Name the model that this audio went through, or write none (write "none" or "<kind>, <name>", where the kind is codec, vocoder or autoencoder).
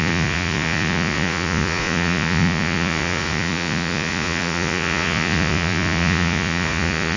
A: vocoder, Vocos